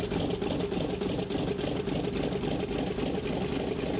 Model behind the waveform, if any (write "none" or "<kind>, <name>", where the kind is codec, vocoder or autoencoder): none